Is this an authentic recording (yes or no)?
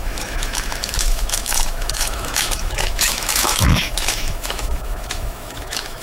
no